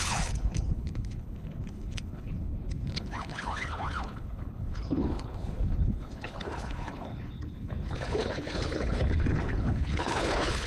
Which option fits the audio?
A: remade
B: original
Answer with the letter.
A